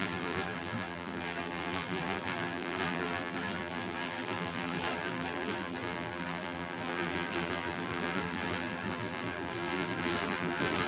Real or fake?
fake